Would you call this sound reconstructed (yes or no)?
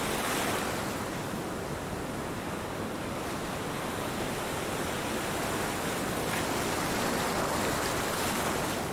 no